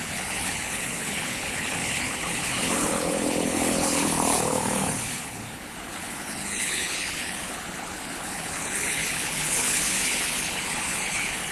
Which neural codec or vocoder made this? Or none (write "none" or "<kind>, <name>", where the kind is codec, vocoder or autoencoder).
codec, HILCodec